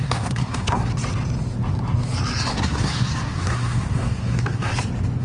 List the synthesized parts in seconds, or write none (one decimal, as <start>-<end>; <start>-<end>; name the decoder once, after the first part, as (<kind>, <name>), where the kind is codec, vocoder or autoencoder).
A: 0.0-0.9 (codec, SNAC); 2.5-4.7